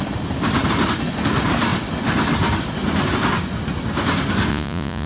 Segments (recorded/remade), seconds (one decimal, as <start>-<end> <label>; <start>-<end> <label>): 0.0-4.5 recorded; 4.5-5.1 remade